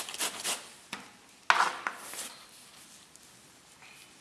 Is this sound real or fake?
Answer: real